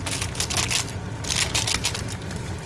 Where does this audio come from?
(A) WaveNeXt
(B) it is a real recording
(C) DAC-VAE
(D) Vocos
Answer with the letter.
B